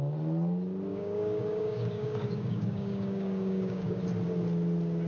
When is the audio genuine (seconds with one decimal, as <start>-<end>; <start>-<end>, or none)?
0.0-0.9; 4.0-5.1